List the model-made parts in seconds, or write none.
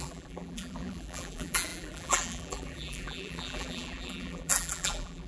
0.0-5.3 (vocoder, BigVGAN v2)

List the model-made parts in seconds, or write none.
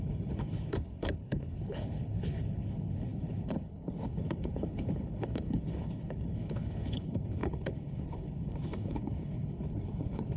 0.0-10.4 (codec, HILCodec)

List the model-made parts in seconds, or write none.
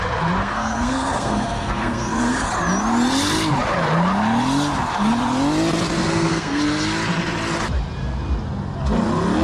0.4-2.5 (codec, SNAC); 6.0-6.6